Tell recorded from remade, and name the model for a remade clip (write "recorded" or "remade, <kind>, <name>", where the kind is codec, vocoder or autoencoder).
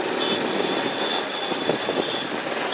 recorded